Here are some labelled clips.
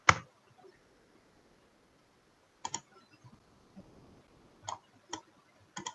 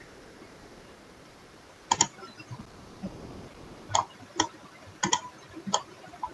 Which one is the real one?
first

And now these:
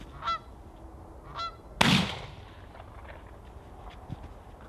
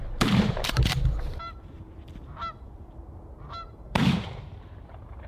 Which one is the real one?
first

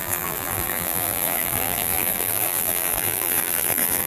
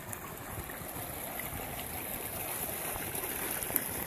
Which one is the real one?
second